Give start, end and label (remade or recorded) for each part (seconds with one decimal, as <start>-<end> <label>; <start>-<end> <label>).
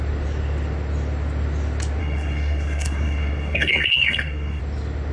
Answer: 0.0-2.0 recorded; 2.0-4.6 remade; 4.6-5.1 recorded